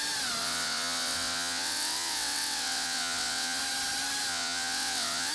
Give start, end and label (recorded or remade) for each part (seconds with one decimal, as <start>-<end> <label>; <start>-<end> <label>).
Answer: 0.0-0.4 recorded; 0.4-3.6 remade; 3.6-4.3 recorded; 4.3-5.3 remade